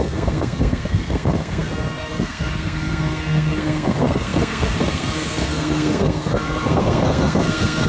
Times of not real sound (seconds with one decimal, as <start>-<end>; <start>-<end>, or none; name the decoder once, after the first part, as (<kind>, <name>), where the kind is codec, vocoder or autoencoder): 0.0-7.9 (codec, SNAC)